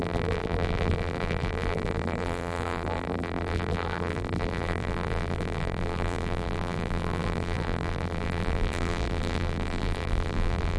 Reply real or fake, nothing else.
fake